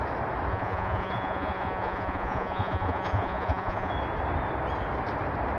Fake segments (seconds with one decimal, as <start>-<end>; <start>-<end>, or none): 0.5-3.9